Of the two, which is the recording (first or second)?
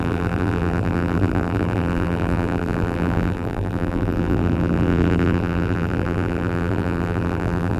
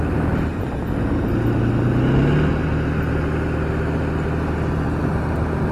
second